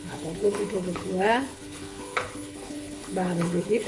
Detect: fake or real fake